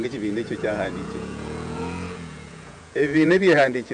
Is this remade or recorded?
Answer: remade